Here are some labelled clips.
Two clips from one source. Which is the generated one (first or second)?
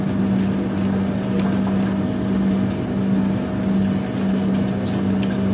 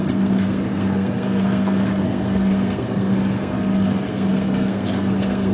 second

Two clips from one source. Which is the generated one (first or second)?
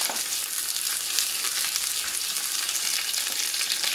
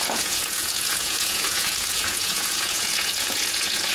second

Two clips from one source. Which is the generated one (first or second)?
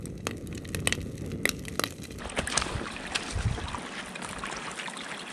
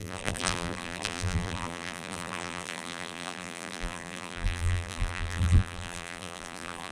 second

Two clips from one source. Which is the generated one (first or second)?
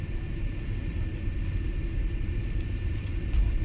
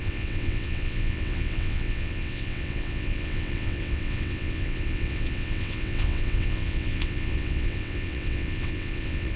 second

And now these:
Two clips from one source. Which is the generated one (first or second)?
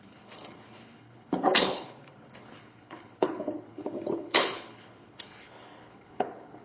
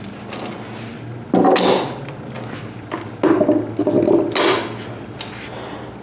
first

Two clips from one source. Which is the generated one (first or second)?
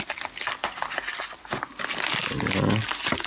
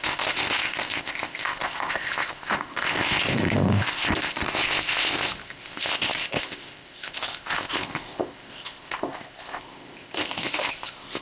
second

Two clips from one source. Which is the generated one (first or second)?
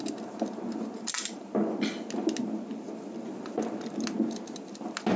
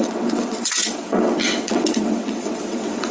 second